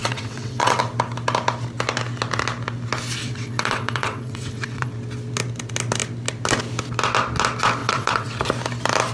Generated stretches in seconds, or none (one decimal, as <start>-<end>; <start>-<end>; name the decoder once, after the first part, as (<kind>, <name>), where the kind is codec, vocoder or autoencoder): 0.0-0.8 (vocoder, WaveNeXt); 3.2-4.9; 7.8-8.4